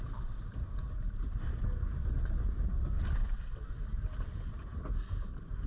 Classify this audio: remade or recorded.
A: recorded